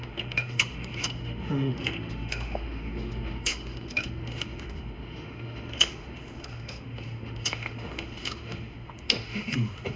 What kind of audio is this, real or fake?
fake